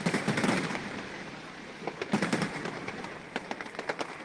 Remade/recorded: remade